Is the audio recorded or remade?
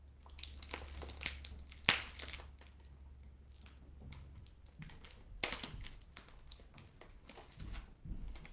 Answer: recorded